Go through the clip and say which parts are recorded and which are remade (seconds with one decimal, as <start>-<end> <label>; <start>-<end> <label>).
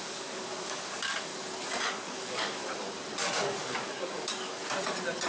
0.0-1.3 remade; 1.3-1.9 recorded; 1.9-2.6 remade; 2.6-3.4 recorded; 3.4-4.6 remade; 4.6-5.3 recorded